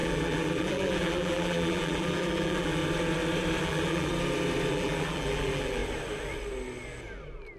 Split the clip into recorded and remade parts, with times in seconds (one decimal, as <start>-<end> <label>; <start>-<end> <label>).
0.0-2.8 remade; 2.8-3.6 recorded; 3.6-4.1 remade; 4.1-4.7 recorded; 4.7-5.8 remade; 5.8-7.6 recorded